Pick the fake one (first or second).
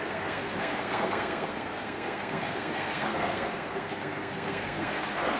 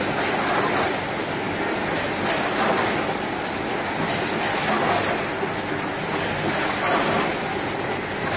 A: first